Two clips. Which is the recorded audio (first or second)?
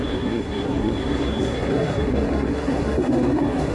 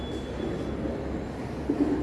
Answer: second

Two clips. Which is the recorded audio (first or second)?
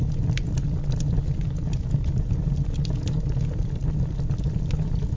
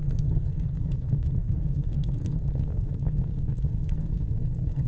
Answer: first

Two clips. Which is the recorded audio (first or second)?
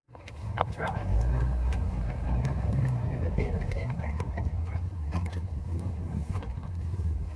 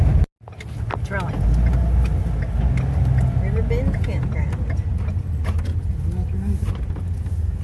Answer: second